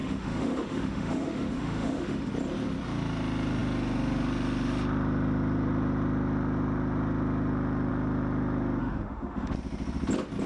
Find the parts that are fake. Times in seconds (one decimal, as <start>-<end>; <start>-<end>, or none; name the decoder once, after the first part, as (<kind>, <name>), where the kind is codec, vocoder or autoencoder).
0.0-2.3 (autoencoder, DAC-VAE); 8.8-9.5